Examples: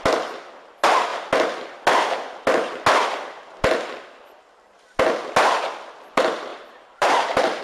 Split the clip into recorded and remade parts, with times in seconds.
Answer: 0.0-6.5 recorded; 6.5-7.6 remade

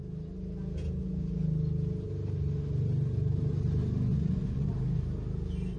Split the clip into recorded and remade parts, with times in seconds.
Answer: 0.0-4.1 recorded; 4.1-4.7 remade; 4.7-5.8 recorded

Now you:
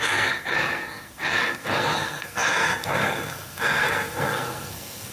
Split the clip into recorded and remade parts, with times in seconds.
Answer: 0.0-5.1 remade

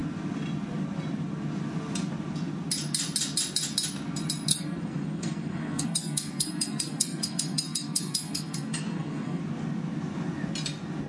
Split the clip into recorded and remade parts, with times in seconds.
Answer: 0.0-4.5 recorded; 4.5-9.4 remade; 9.4-11.1 recorded